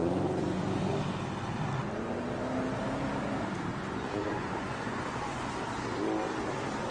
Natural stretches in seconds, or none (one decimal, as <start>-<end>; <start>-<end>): 0.9-3.7; 5.5-6.9